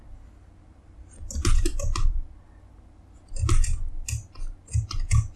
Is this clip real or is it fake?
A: real